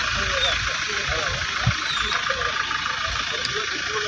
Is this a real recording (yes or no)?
yes